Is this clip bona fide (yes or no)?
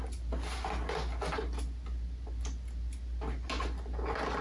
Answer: yes